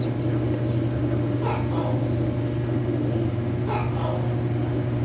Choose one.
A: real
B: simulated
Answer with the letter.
A